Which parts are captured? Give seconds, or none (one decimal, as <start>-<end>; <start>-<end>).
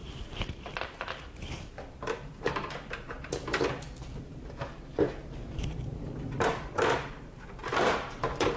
3.6-4.3